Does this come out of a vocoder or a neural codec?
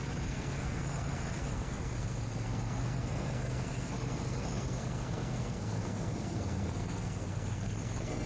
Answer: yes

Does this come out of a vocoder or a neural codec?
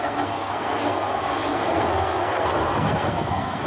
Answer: yes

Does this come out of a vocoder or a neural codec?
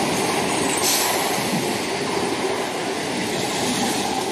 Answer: no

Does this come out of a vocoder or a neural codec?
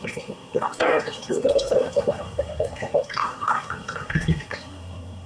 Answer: yes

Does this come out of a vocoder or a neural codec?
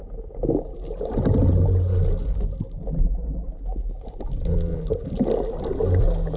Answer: no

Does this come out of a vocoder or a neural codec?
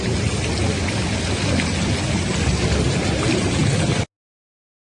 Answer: no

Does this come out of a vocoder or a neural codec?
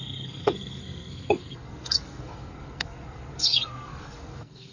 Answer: yes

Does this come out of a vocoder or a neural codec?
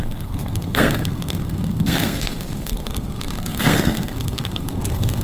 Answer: yes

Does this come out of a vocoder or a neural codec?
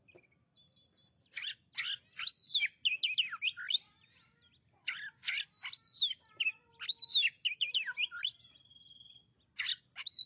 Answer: no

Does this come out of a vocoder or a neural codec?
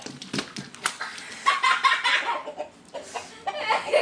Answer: no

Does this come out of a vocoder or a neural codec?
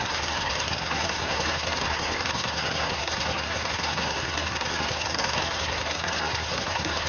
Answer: yes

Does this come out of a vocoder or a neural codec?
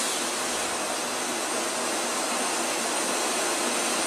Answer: no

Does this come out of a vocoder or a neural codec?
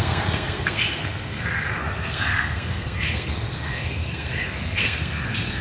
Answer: yes